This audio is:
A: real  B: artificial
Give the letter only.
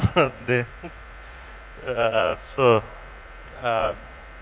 B